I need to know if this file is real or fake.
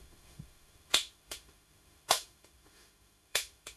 fake